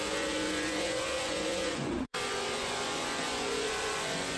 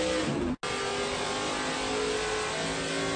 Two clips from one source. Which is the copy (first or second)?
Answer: first